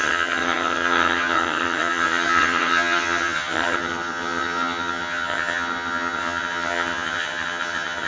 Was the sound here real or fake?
fake